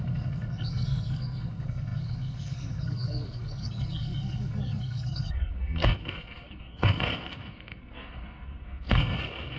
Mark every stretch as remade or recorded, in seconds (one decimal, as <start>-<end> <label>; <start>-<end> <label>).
0.0-9.6 remade